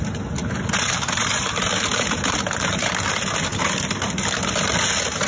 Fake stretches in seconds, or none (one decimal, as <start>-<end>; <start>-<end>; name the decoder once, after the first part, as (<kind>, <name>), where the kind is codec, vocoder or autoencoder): 0.4-3.1 (vocoder, BigVGAN v2)